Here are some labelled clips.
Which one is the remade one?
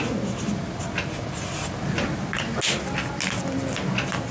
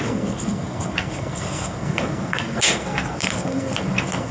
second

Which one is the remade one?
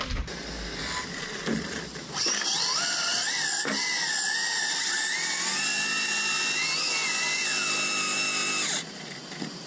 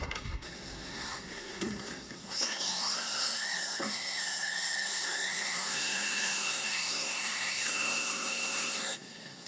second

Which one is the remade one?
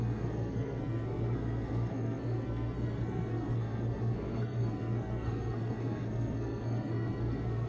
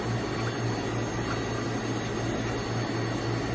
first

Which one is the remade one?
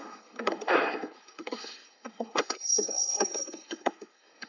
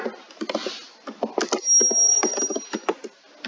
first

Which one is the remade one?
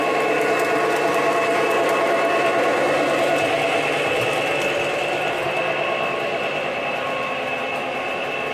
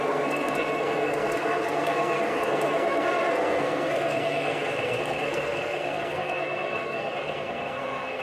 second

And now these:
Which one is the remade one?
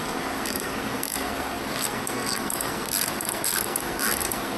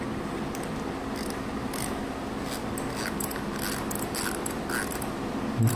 first